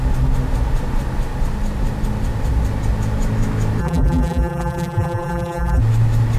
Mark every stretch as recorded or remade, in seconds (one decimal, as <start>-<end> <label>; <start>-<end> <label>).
0.0-3.8 recorded; 3.8-5.8 remade; 5.8-6.4 recorded